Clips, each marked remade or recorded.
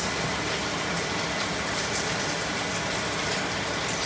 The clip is recorded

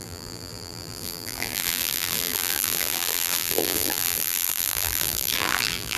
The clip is remade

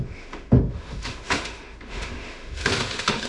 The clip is remade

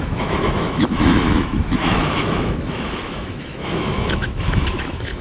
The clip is remade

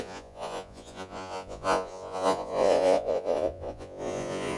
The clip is remade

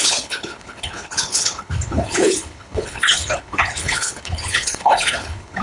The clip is remade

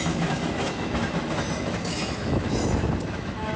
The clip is remade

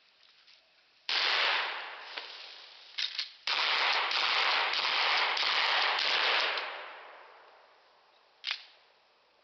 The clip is recorded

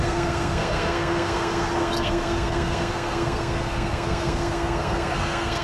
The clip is remade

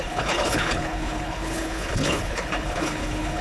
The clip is remade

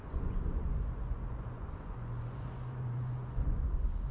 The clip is remade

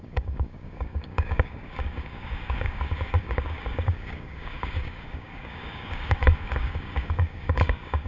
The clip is remade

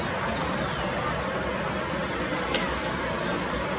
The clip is recorded